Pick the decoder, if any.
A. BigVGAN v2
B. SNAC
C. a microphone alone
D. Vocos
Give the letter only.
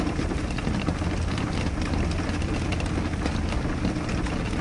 C